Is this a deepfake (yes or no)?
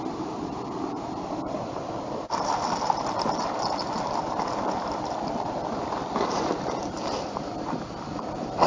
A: yes